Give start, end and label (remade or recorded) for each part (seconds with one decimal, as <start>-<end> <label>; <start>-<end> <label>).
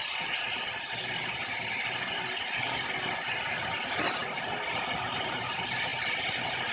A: 0.0-6.7 recorded